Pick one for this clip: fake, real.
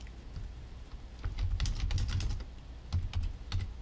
real